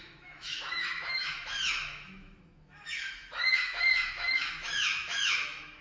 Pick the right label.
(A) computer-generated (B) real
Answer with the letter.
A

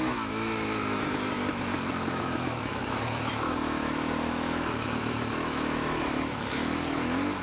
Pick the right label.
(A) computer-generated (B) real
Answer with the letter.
A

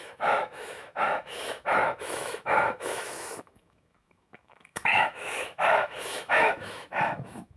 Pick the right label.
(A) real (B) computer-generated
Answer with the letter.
B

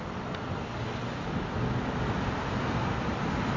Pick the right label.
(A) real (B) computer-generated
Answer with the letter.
A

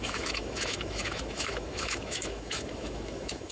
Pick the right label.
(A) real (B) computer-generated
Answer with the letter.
B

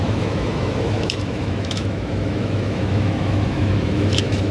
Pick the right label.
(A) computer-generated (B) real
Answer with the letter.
A